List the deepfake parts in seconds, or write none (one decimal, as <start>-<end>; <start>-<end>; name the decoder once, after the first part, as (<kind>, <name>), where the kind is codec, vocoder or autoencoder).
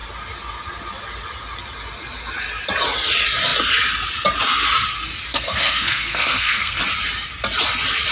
5.3-6.8 (codec, SNAC)